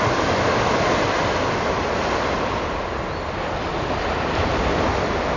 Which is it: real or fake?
real